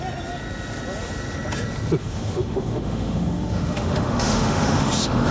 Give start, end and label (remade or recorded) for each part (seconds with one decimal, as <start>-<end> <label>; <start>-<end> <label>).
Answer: 0.0-2.0 recorded; 2.0-5.3 remade